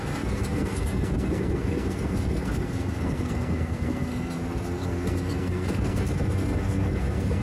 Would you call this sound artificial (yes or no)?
yes